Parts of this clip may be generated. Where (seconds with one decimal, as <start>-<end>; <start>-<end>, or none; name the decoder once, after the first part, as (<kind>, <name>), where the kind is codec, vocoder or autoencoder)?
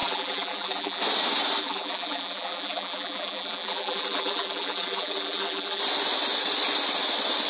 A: 0.0-1.0 (vocoder, BigVGAN v2); 1.6-5.8